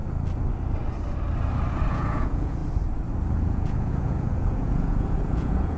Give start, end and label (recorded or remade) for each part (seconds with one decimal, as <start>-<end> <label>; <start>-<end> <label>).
0.0-1.9 recorded; 1.9-2.6 remade; 2.6-3.3 recorded; 3.3-5.8 remade